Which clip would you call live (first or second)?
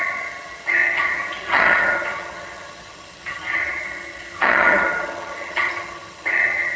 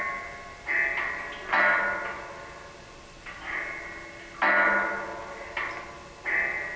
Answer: second